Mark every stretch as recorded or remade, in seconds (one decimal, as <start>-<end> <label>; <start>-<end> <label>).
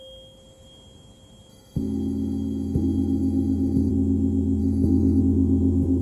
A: 0.0-1.5 recorded; 1.5-3.9 remade; 3.9-4.6 recorded; 4.6-5.2 remade; 5.2-6.0 recorded